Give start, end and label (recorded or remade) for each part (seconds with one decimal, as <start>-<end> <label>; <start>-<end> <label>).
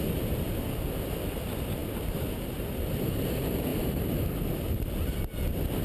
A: 0.0-5.8 recorded